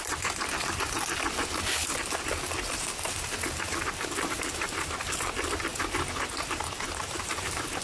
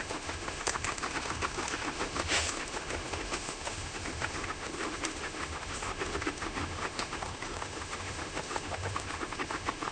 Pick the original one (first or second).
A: first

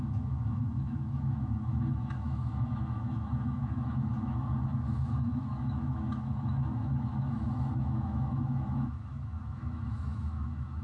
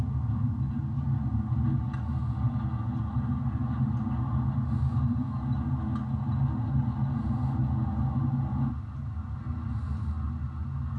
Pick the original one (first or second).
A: second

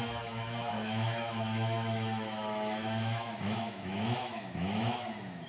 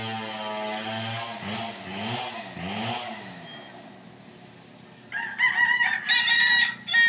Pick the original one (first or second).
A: second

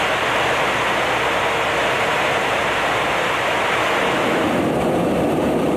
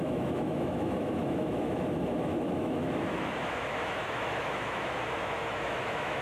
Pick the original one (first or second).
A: first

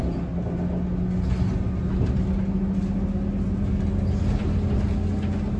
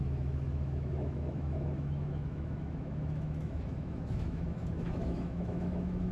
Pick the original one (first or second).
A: first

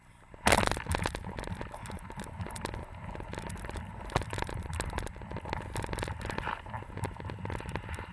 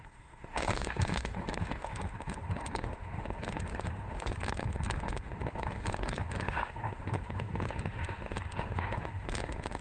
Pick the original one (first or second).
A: first